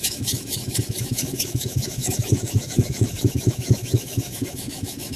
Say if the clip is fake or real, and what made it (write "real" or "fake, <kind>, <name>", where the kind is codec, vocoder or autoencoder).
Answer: fake, autoencoder, DAC-VAE